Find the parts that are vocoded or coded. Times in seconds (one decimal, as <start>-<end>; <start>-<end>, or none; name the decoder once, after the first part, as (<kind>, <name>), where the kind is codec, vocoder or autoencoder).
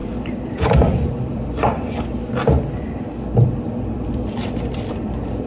0.0-1.6 (vocoder, BigVGAN v2); 3.4-5.5